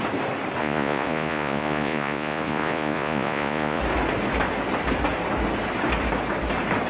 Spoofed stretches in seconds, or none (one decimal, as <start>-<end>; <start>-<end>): 0.6-3.8

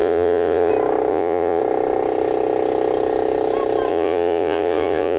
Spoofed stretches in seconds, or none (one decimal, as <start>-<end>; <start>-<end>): 0.0-0.7; 1.1-1.6; 3.9-5.2